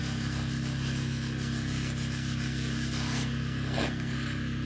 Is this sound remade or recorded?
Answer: remade